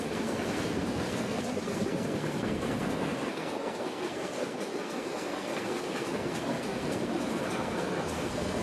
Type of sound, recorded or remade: remade